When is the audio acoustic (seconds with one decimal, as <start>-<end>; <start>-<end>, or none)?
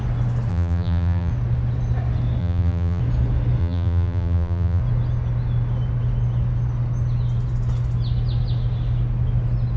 0.0-0.5; 1.3-2.4; 3.0-3.6; 4.8-9.8